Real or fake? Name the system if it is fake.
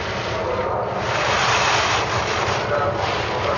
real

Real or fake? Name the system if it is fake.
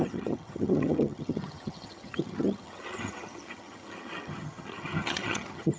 fake, vocoder, HiFi-GAN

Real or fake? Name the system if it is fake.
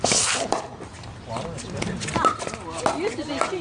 real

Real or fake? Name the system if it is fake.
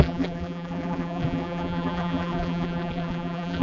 fake, vocoder, BigVGAN v2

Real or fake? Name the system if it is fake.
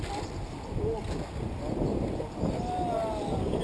real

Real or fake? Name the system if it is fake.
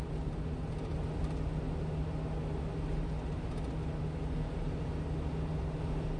real